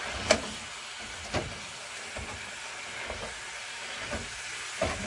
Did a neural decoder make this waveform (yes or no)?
no